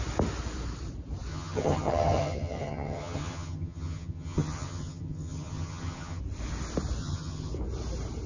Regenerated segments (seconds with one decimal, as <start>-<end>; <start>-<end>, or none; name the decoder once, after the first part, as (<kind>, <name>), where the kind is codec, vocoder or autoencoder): 1.3-6.2 (vocoder, HiFi-GAN); 7.0-7.5